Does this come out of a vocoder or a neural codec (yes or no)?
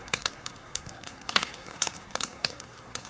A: yes